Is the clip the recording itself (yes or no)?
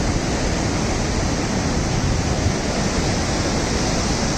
yes